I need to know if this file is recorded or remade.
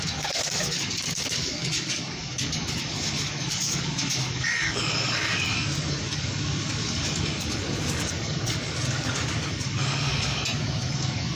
remade